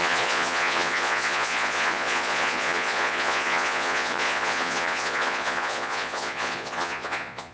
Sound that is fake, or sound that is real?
fake